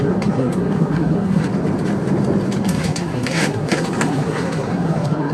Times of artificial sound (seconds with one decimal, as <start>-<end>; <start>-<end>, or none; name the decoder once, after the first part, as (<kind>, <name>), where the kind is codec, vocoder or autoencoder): 0.0-1.5 (codec, SNAC); 2.6-5.3